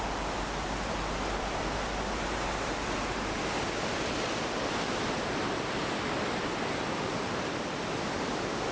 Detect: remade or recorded recorded